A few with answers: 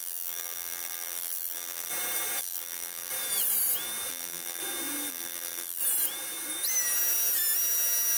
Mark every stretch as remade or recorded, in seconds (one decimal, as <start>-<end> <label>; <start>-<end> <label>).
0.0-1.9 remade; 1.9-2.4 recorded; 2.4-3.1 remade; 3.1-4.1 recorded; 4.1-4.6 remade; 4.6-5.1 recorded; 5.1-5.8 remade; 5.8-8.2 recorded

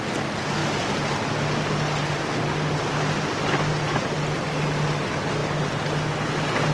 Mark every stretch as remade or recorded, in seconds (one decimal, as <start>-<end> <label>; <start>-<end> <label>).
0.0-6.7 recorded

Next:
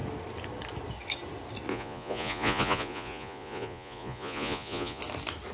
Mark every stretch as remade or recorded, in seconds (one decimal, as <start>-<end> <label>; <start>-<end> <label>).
0.0-1.7 recorded; 1.7-5.0 remade; 5.0-5.5 recorded

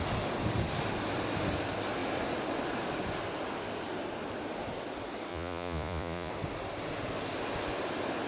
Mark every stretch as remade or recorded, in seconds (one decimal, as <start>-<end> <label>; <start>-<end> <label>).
0.0-5.3 recorded; 5.3-6.3 remade; 6.3-8.3 recorded

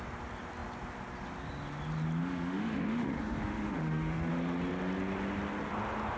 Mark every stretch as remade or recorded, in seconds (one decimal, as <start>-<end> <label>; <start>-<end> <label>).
0.0-2.2 recorded; 2.2-4.3 remade; 4.3-6.2 recorded

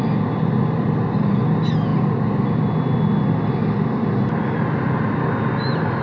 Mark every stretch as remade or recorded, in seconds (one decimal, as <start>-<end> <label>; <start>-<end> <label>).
0.0-6.0 recorded

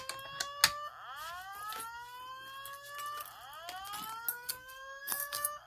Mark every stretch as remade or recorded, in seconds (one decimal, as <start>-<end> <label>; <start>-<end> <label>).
0.0-4.3 recorded; 4.3-5.7 remade